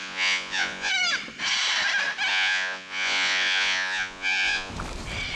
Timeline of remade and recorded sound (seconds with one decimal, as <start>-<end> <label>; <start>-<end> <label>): 0.0-0.9 remade; 0.9-2.3 recorded; 2.3-4.7 remade; 4.7-5.4 recorded